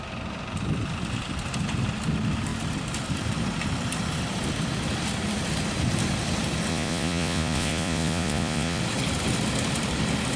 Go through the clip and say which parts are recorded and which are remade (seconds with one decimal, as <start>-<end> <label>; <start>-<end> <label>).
0.0-6.7 recorded; 6.7-8.8 remade; 8.8-10.4 recorded